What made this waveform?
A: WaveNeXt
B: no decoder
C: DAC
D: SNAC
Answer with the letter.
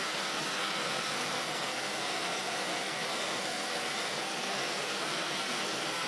D